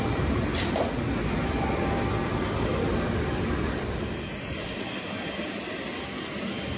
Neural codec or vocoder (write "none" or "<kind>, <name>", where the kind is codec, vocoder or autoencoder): none